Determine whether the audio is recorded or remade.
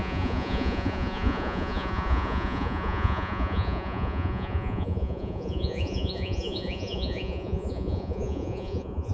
remade